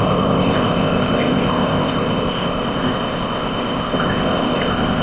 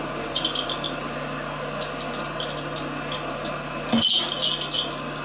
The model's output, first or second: first